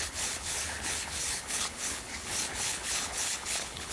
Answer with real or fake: fake